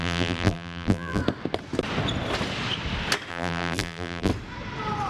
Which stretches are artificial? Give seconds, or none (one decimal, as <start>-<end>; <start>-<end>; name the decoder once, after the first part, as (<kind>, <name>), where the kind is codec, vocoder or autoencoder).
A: 0.0-1.2 (vocoder, BigVGAN v2); 3.3-4.3